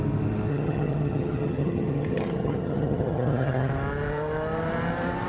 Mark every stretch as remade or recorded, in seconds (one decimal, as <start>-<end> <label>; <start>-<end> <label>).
0.0-0.5 recorded; 0.5-3.7 remade; 3.7-5.3 recorded